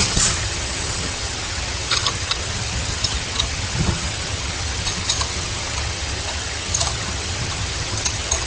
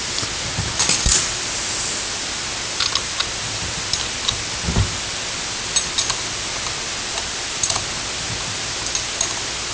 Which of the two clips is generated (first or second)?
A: first